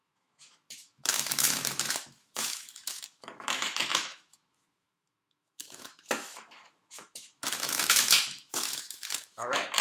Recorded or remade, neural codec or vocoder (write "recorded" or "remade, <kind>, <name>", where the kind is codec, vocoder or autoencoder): remade, autoencoder, DAC-VAE